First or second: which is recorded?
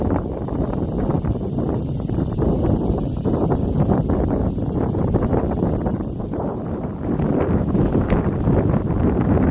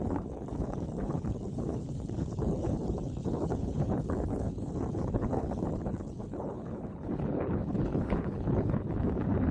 first